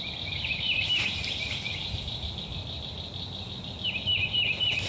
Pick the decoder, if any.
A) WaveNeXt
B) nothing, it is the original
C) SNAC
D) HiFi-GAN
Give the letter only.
B